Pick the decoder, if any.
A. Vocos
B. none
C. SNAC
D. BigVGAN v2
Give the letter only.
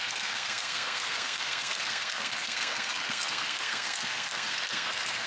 C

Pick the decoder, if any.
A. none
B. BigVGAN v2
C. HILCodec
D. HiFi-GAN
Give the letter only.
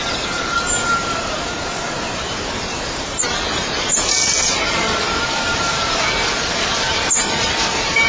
B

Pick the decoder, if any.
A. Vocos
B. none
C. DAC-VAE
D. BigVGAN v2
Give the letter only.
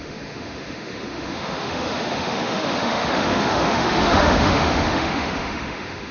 C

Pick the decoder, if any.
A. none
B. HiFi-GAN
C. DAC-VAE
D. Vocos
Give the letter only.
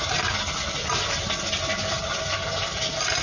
A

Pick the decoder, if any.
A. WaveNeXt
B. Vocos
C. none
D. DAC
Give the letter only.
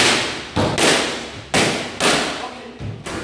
C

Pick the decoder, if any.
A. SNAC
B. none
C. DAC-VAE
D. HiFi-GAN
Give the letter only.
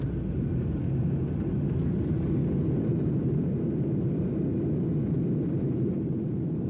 B